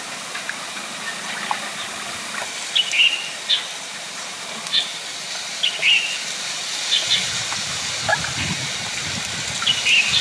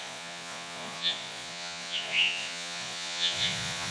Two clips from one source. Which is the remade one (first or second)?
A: second